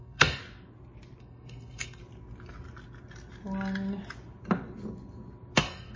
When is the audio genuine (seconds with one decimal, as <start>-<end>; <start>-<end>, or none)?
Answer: 0.4-1.2; 2.0-5.6